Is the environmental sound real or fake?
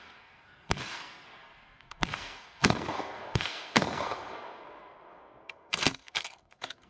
fake